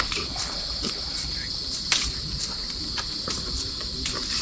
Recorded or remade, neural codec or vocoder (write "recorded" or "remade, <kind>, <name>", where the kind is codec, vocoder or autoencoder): remade, vocoder, BigVGAN v2